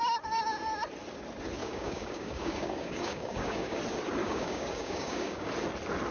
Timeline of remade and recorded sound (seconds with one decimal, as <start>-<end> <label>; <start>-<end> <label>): 0.0-1.6 recorded; 1.6-3.8 remade; 3.8-4.2 recorded; 4.2-5.5 remade; 5.5-6.1 recorded